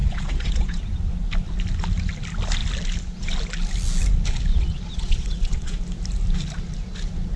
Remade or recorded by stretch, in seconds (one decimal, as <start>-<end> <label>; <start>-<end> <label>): 0.0-0.8 remade; 0.8-4.5 recorded; 4.5-5.8 remade; 5.8-7.4 recorded